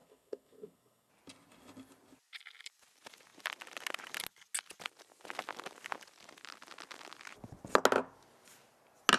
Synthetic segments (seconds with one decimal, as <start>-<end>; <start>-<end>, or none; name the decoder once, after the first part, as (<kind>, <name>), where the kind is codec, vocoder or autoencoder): 0.0-1.1 (codec, SNAC)